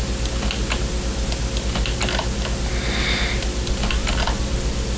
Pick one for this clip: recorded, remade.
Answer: recorded